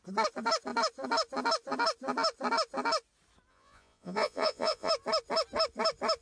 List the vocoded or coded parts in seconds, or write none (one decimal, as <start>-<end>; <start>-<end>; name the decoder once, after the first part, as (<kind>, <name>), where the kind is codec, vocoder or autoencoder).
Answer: 3.5-4.9 (vocoder, Vocos)